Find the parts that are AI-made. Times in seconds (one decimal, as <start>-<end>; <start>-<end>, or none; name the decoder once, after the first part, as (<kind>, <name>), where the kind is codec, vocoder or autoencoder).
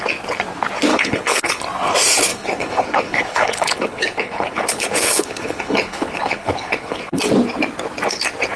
0.9-1.6 (codec, HILCodec); 2.3-7.2